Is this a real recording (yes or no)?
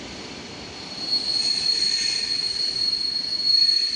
yes